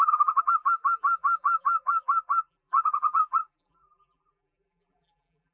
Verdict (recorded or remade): remade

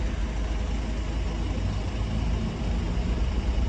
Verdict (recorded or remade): recorded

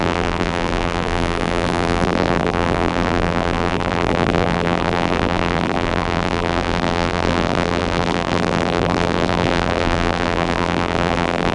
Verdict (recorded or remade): remade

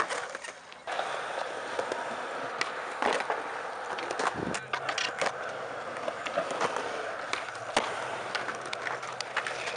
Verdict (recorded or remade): recorded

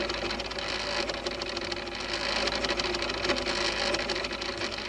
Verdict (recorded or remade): recorded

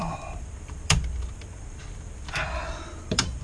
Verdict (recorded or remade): remade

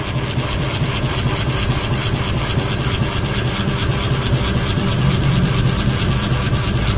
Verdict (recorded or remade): remade